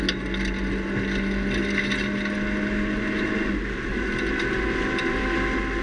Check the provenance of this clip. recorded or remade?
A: recorded